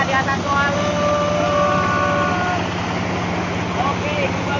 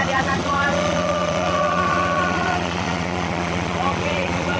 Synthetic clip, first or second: second